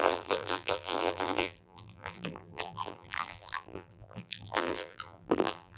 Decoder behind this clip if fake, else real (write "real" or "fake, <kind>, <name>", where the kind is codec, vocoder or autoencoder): fake, vocoder, BigVGAN v2